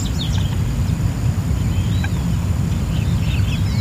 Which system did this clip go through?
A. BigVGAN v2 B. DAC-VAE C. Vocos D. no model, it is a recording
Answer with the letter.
D